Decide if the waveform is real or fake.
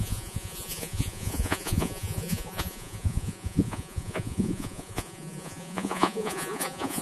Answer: fake